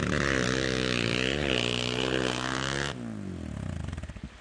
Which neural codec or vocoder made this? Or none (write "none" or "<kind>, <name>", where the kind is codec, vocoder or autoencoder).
none